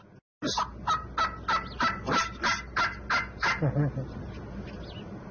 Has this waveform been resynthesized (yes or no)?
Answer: no